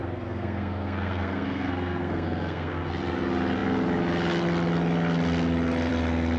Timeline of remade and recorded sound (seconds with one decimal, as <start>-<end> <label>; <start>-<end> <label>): 0.0-2.9 remade; 2.9-6.4 recorded